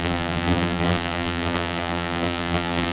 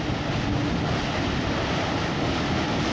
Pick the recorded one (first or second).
second